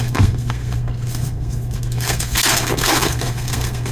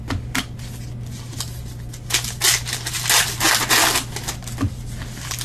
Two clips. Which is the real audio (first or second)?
second